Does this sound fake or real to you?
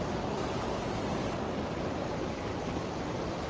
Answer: real